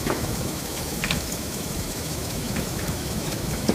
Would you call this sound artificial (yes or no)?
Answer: yes